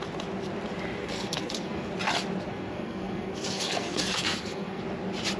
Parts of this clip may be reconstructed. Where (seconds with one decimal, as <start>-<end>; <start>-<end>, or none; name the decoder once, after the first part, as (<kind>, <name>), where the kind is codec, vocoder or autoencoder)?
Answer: 1.0-1.9 (codec, SNAC); 2.5-4.8